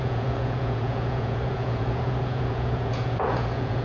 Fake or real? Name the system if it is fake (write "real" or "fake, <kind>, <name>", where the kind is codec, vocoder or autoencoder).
fake, vocoder, Vocos